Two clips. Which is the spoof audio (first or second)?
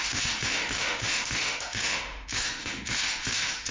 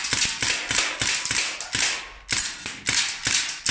first